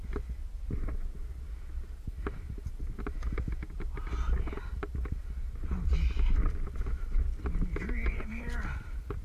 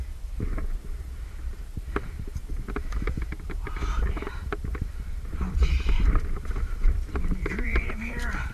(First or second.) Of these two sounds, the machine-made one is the second